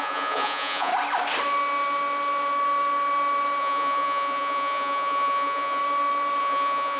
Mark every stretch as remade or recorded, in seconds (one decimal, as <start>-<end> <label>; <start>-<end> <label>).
0.0-0.9 remade; 0.9-3.6 recorded; 3.6-5.8 remade; 5.8-6.4 recorded; 6.4-7.0 remade